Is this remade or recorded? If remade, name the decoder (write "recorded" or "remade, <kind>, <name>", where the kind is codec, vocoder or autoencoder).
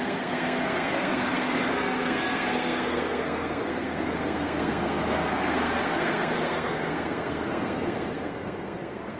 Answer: remade, codec, SNAC